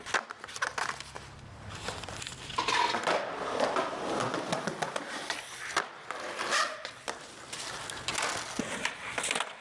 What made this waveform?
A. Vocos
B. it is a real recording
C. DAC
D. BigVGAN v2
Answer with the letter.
B